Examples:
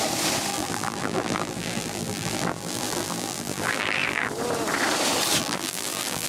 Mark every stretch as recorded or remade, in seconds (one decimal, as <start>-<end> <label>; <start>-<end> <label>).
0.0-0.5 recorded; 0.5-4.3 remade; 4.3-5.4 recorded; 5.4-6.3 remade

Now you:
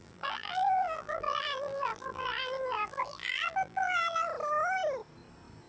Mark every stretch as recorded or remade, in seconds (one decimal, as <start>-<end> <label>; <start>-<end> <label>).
0.0-4.3 remade; 4.3-5.7 recorded

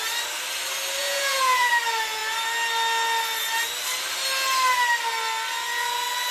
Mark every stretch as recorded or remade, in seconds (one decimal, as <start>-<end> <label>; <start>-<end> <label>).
0.0-1.0 recorded; 1.0-1.7 remade; 1.7-6.3 recorded

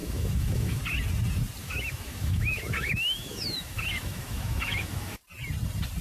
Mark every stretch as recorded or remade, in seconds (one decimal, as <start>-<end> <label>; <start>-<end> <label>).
0.0-0.8 remade; 0.8-1.6 recorded; 1.6-5.2 remade; 5.2-6.0 recorded

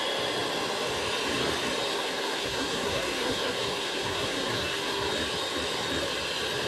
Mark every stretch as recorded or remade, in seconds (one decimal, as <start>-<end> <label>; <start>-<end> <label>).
0.0-1.9 recorded; 1.9-5.1 remade; 5.1-6.7 recorded

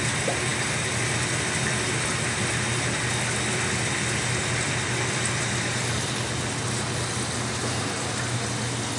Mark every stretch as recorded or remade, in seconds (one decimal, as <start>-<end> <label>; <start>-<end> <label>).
0.0-9.0 recorded

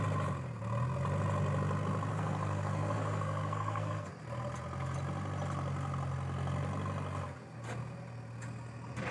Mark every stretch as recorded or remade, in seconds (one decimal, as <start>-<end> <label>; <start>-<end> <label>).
0.0-2.1 recorded; 2.1-4.1 remade; 4.1-9.1 recorded

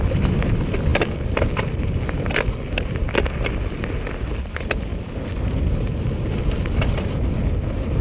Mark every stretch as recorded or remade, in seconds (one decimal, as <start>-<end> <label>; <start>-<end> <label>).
0.0-4.9 recorded; 4.9-6.4 remade; 6.4-8.0 recorded